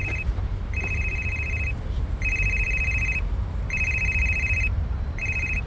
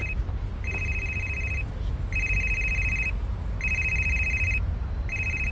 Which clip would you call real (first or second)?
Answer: second